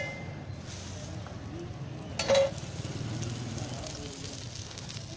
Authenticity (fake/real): real